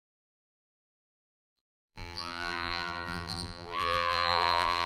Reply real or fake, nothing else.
fake